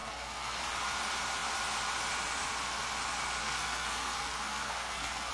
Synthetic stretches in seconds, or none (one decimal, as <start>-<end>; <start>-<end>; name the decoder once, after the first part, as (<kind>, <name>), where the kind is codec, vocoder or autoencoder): 0.0-0.6 (codec, SNAC); 3.4-5.3